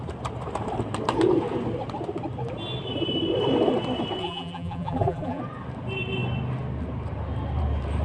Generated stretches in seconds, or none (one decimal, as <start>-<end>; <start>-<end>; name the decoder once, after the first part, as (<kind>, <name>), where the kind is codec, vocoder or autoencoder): 4.2-5.4 (vocoder, BigVGAN v2)